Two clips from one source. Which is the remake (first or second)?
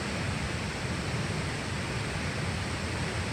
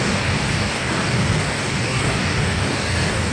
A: second